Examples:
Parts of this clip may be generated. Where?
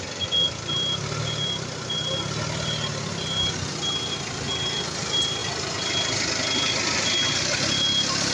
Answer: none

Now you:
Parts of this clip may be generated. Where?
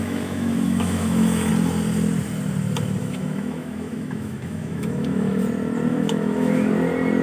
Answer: 0.0-1.5 (autoencoder, DAC-VAE); 3.0-5.4; 5.9-6.7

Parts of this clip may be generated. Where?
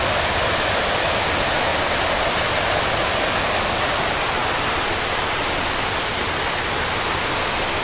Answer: none